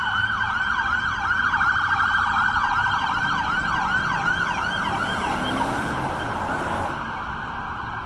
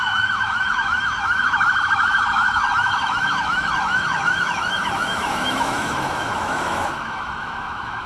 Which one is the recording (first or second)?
first